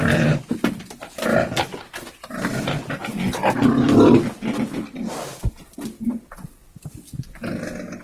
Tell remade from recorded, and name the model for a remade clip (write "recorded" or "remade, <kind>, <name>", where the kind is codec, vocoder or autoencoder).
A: recorded